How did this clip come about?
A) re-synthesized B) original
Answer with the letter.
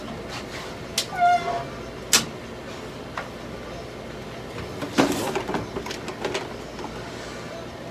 B